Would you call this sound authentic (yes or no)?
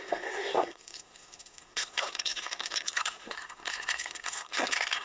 no